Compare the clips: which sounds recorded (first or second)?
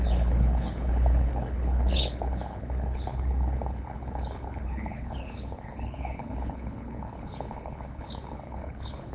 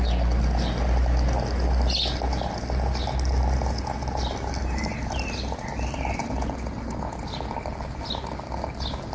second